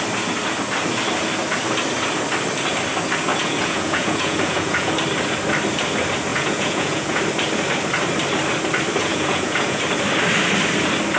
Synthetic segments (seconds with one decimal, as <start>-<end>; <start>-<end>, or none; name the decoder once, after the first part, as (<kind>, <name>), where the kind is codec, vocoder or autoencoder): 3.3-4.9 (vocoder, Vocos); 6.3-7.2; 9.0-9.8